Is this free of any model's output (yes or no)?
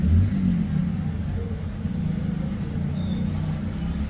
yes